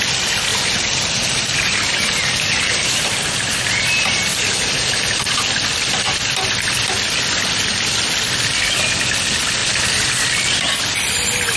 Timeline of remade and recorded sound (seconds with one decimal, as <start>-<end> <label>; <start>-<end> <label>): 0.0-0.5 recorded; 0.5-5.3 remade; 5.3-11.6 recorded